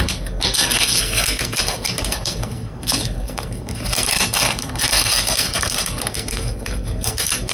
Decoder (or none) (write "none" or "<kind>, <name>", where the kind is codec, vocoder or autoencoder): codec, SNAC